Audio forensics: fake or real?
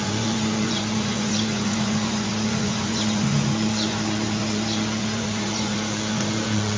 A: fake